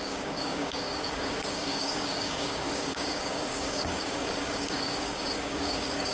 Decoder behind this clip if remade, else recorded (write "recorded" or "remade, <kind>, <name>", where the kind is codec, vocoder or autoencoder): remade, codec, DAC